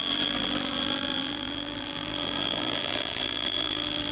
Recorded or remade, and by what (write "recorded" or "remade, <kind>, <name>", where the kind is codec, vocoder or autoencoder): remade, vocoder, BigVGAN v2